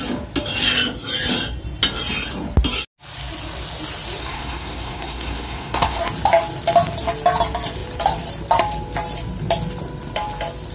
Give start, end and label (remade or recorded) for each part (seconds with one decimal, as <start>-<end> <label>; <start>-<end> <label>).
0.0-4.2 recorded; 4.2-6.0 remade; 6.0-10.7 recorded